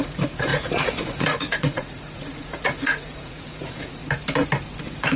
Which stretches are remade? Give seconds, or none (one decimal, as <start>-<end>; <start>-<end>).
0.0-4.0; 4.8-5.2